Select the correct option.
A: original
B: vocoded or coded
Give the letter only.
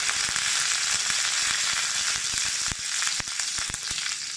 A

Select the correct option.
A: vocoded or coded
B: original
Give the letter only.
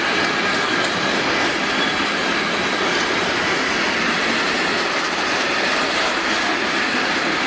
B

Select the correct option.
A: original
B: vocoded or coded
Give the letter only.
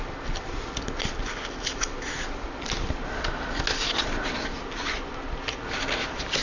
A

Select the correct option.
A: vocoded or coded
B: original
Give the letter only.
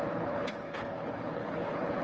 A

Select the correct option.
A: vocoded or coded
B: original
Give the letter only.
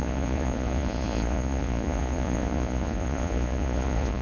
A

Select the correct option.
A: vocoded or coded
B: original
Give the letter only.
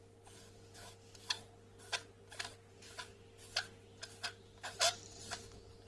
B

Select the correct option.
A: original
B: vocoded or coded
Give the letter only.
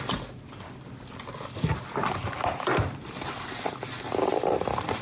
A